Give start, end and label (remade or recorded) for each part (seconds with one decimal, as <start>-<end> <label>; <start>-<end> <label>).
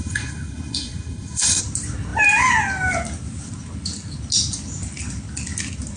0.0-1.6 remade; 1.6-6.0 recorded